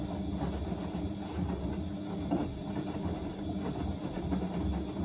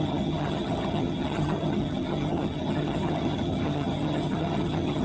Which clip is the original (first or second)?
first